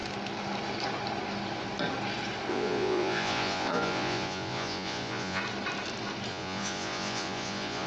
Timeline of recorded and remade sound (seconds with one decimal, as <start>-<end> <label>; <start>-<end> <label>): 0.0-2.5 recorded; 2.5-5.4 remade; 5.4-6.3 recorded; 6.3-7.9 remade